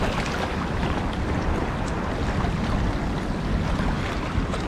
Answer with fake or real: real